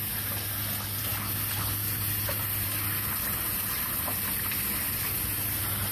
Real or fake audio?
real